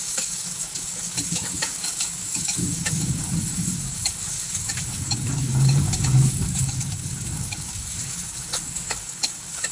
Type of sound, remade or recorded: remade